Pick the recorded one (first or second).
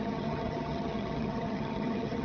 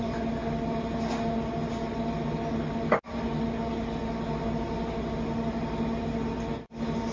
second